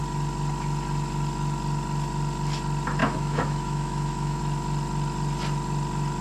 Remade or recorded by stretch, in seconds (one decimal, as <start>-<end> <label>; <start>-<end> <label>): 0.0-3.0 recorded; 3.0-4.4 remade; 4.4-6.2 recorded